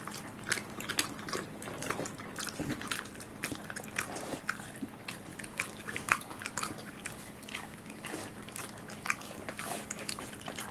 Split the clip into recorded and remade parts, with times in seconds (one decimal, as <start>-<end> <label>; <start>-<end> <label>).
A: 0.0-5.3 recorded; 5.3-10.2 remade; 10.2-10.7 recorded